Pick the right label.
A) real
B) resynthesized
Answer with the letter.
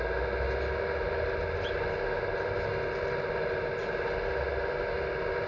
A